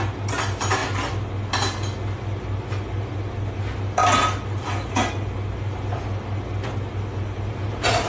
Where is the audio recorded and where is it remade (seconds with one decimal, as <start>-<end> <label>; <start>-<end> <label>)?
0.0-0.8 remade; 0.8-3.6 recorded; 3.6-4.0 remade; 4.0-7.5 recorded; 7.5-8.1 remade